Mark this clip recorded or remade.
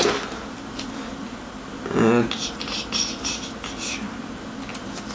recorded